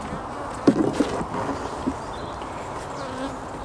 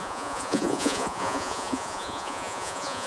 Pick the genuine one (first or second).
first